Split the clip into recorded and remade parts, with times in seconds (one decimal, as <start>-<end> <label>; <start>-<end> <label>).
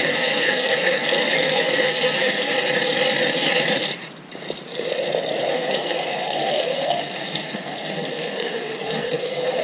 0.0-2.5 remade; 2.5-5.5 recorded; 5.5-9.6 remade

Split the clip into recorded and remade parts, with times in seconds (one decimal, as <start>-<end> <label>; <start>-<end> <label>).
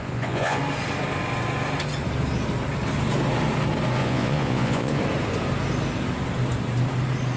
0.0-0.6 remade; 0.6-4.0 recorded; 4.0-5.0 remade; 5.0-7.4 recorded